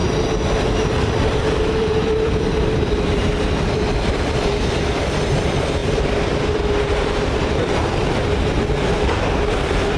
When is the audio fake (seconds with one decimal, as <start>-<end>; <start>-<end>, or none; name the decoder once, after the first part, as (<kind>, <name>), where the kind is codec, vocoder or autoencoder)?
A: 0.6-8.0 (vocoder, BigVGAN v2); 9.5-10.0